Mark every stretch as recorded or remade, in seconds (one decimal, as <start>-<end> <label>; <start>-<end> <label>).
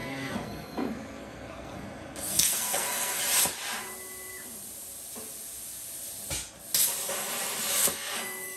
0.0-3.2 remade; 3.2-7.8 recorded; 7.8-8.6 remade